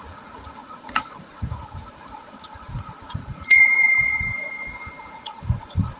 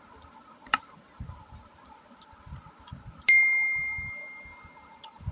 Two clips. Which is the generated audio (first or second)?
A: first